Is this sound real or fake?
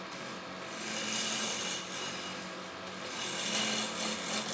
real